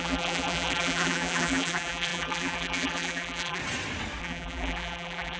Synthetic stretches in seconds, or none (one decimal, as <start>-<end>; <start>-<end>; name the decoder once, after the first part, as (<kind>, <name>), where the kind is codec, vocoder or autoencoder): 0.0-3.6 (vocoder, BigVGAN v2); 4.2-5.4